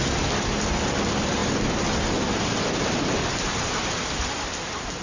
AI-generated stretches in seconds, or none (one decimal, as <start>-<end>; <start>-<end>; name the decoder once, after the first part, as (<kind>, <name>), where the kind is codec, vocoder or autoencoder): none